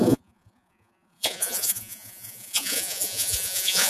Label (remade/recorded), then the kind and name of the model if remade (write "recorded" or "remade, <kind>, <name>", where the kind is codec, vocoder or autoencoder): remade, vocoder, Vocos